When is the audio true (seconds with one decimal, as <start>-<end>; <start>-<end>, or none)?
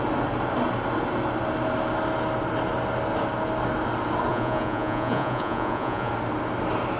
0.0-4.3; 6.1-7.0